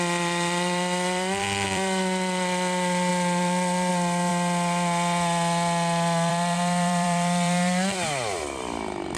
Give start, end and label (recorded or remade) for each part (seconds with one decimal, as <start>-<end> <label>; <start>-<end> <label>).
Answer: 0.0-4.3 remade; 4.3-6.3 recorded; 6.3-9.2 remade